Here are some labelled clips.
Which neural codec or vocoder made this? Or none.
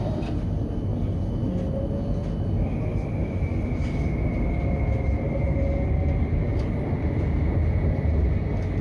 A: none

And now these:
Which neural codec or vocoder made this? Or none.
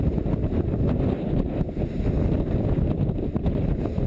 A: none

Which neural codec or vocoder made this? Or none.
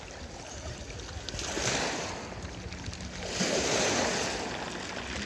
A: none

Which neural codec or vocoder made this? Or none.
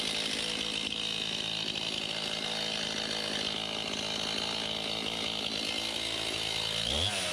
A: none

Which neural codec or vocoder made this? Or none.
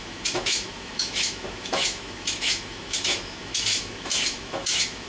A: autoencoder, DAC-VAE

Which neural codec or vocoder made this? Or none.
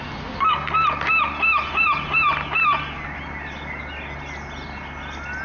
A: none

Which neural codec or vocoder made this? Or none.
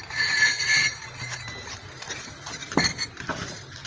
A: none